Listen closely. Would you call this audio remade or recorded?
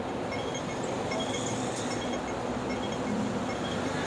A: recorded